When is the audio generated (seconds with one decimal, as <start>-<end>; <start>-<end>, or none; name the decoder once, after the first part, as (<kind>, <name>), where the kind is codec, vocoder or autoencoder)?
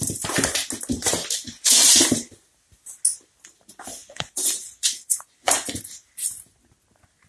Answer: 4.0-5.8 (vocoder, Vocos)